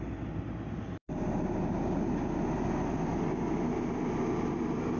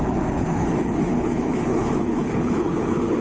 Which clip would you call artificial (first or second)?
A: second